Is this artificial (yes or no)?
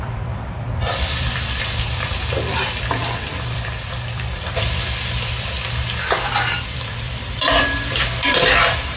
yes